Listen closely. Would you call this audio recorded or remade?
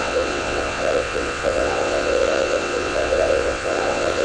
remade